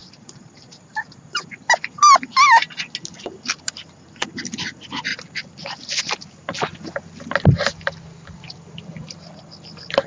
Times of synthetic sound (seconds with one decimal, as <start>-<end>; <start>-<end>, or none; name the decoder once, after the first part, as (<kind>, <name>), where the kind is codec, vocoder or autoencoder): 0.0-1.5 (vocoder, BigVGAN v2)